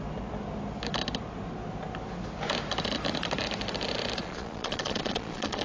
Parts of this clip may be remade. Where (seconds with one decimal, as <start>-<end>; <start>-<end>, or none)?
4.2-5.6